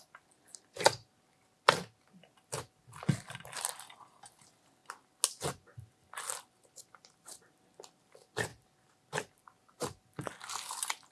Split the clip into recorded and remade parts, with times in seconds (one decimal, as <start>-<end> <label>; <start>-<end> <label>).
0.0-11.1 recorded